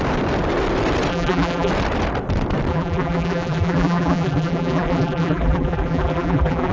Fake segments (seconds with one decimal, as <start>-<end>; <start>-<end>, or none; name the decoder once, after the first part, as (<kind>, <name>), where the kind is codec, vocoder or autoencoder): 1.1-1.7 (vocoder, BigVGAN v2); 2.7-6.7